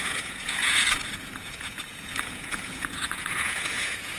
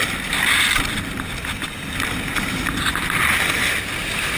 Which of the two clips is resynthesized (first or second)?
first